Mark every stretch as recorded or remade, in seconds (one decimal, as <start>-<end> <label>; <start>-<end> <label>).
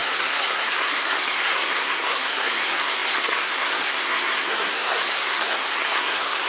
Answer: 0.0-6.5 remade